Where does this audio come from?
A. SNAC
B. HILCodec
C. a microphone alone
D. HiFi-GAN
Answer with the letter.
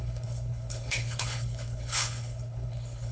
B